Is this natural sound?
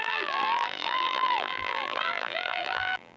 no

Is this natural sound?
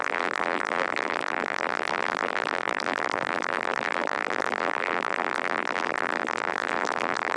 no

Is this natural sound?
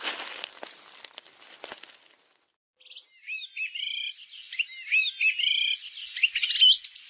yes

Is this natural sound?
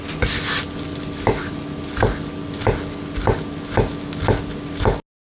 yes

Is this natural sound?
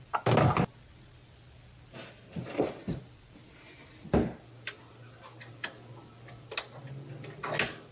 yes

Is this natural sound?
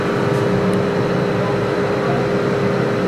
yes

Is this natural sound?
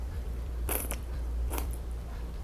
no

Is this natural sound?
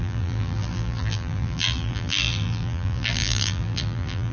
no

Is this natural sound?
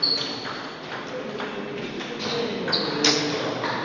no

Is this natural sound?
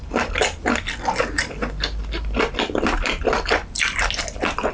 yes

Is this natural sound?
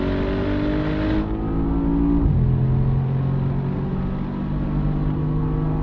yes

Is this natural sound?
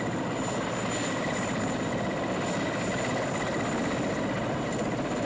yes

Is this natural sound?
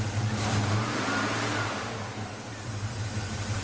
no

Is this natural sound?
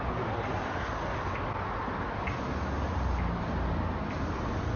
yes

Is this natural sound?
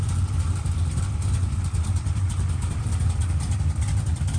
no